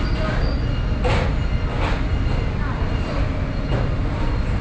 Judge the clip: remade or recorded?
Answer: recorded